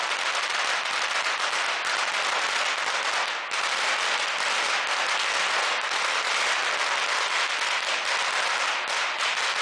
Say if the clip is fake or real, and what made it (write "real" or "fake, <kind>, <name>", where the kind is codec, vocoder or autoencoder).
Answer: real